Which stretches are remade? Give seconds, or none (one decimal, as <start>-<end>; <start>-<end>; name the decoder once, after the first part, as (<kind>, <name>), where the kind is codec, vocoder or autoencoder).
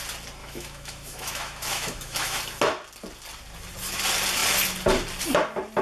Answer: 0.4-2.4 (autoencoder, DAC-VAE)